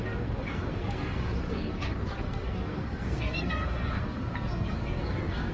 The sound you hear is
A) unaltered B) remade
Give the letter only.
B